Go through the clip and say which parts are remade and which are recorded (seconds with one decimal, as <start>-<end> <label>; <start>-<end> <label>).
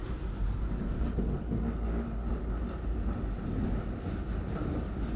0.0-5.2 recorded